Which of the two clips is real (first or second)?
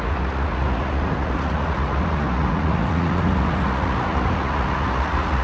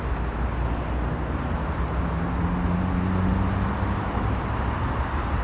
second